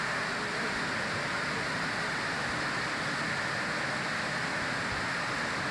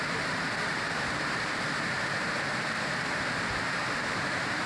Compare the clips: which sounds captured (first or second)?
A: first